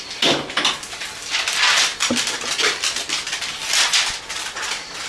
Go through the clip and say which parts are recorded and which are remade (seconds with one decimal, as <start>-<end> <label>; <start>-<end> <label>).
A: 0.0-5.1 recorded

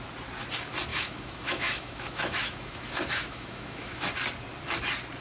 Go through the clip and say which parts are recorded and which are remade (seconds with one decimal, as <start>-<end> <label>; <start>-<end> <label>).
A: 0.0-0.9 recorded; 0.9-4.0 remade; 4.0-5.2 recorded